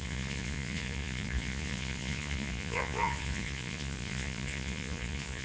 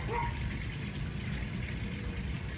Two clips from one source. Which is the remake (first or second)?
first